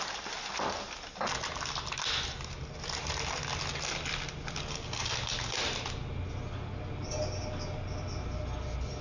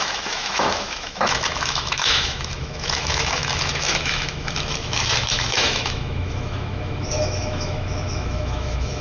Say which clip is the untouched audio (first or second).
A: first